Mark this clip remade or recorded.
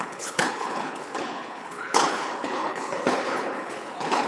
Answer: remade